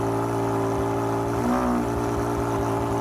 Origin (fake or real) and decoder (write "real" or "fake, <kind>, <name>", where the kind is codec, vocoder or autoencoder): real